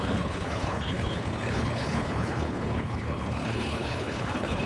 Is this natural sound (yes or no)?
no